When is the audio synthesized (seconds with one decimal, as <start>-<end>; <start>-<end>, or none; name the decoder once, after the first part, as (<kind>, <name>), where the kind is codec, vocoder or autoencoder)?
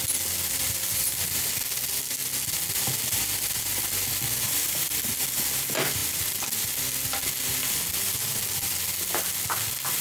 none